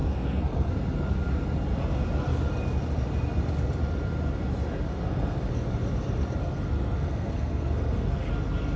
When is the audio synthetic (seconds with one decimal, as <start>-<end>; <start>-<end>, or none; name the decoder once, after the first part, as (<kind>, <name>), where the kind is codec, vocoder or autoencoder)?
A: 0.0-0.7 (codec, SNAC); 5.0-5.5; 6.4-8.3